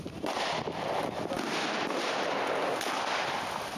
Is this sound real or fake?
real